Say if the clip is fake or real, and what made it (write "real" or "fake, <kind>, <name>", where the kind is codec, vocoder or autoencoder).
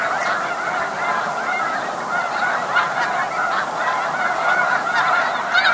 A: real